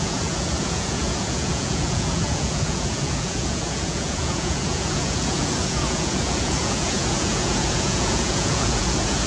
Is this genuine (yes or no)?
no